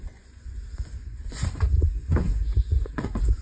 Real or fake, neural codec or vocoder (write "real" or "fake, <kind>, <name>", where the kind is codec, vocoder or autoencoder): fake, vocoder, Vocos